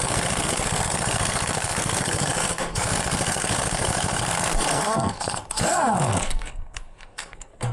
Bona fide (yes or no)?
no